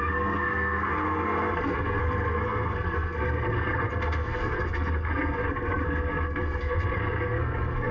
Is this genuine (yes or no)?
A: no